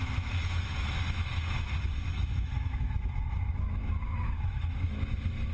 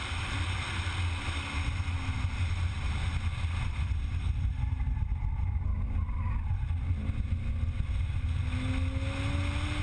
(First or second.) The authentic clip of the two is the second